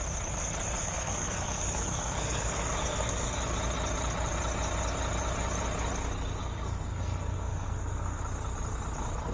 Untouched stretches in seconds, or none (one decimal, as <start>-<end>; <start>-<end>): 0.0-0.8; 3.4-6.4; 8.2-9.3